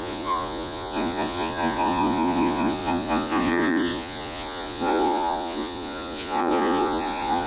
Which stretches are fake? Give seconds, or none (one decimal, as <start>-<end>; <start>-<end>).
0.0-7.5